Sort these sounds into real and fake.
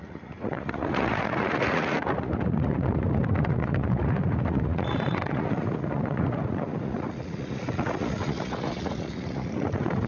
fake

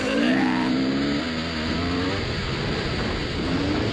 real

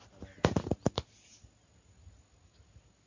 real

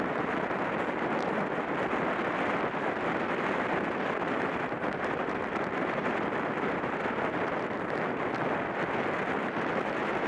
real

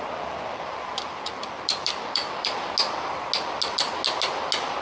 real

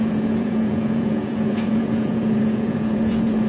fake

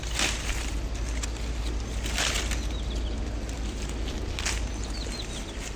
real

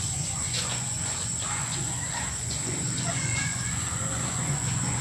fake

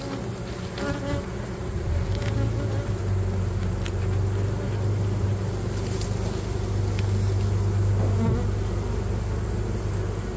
real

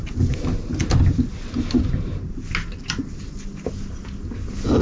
real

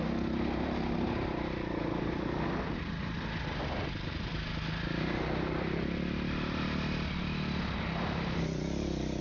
real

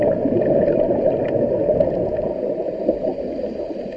real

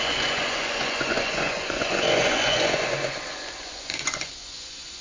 fake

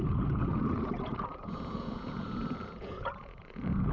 fake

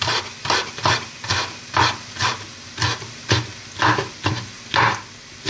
real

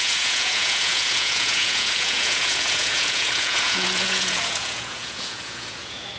fake